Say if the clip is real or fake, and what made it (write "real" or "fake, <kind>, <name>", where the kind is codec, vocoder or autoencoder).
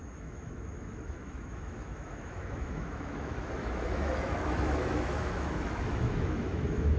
fake, autoencoder, DAC-VAE